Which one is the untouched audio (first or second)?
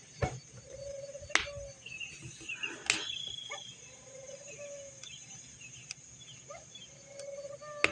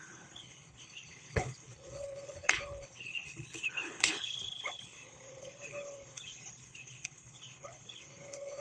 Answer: first